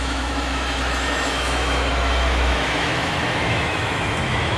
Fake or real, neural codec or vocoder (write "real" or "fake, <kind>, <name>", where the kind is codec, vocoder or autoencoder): fake, autoencoder, DAC-VAE